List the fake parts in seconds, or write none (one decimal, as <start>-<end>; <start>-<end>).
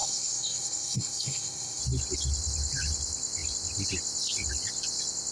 0.0-1.8